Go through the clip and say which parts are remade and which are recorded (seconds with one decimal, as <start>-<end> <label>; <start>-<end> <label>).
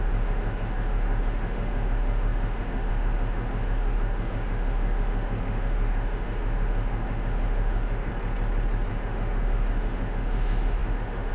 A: 0.0-8.1 remade; 8.1-8.9 recorded; 8.9-11.3 remade